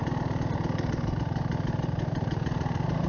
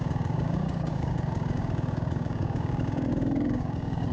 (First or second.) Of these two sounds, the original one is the first